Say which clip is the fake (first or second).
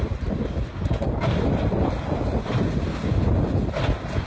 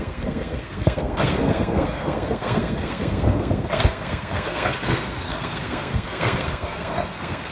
second